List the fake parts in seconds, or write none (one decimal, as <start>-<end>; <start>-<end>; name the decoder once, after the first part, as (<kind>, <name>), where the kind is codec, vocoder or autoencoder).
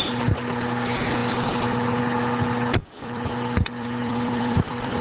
2.8-5.0 (vocoder, BigVGAN v2)